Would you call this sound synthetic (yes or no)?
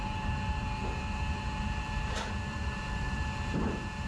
yes